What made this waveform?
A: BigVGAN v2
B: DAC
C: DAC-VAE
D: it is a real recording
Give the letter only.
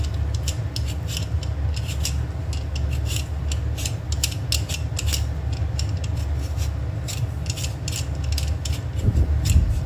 D